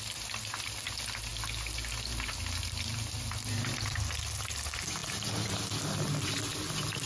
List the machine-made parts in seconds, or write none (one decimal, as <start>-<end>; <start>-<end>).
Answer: none